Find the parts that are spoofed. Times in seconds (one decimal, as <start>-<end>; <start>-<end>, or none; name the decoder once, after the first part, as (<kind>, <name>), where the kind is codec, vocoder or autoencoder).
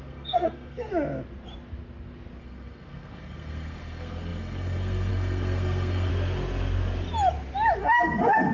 0.0-0.9 (codec, SNAC); 2.4-6.1; 7.8-8.5